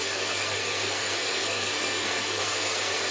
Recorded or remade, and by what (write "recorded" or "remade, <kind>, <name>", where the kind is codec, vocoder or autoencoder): remade, codec, SNAC